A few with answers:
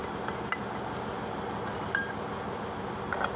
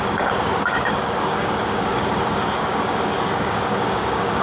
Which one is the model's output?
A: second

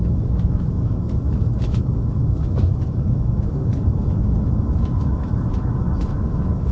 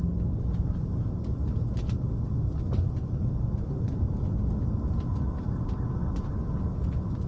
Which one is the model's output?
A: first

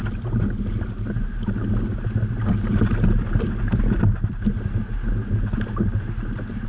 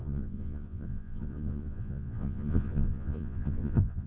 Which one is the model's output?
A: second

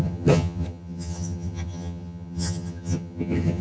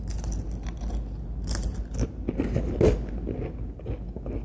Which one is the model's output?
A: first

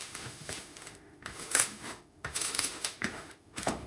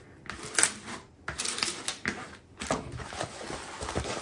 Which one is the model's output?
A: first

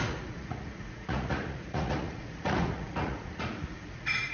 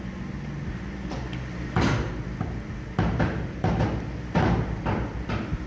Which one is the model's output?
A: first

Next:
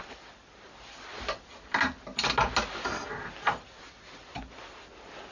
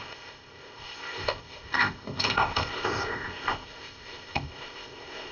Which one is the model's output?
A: second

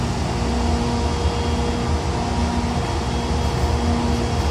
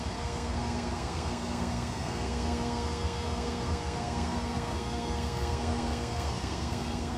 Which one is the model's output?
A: second